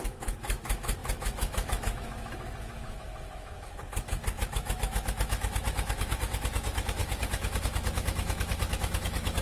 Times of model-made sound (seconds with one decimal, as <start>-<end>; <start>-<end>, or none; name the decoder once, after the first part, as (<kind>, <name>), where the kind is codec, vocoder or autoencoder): 0.0-9.4 (autoencoder, DAC-VAE)

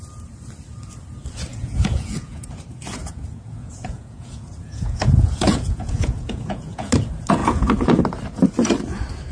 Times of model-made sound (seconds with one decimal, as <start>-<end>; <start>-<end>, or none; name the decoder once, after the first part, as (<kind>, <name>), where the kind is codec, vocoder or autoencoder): 1.5-2.5 (vocoder, Vocos); 3.0-6.9; 7.4-8.0

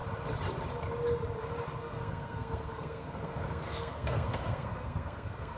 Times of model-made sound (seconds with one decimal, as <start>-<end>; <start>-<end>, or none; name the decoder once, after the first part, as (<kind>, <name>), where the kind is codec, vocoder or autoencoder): 1.8-5.6 (codec, SNAC)

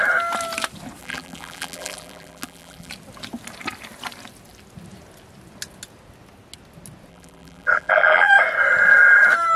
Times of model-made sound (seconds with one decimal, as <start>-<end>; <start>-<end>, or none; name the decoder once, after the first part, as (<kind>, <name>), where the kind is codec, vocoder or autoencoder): 1.0-2.9 (vocoder, BigVGAN v2); 7.1-8.3

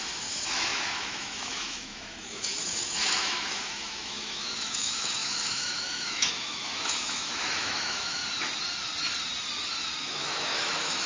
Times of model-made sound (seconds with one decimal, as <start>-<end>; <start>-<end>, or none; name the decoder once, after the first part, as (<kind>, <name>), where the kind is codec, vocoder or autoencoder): 0.0-8.2 (autoencoder, DAC-VAE); 10.0-11.1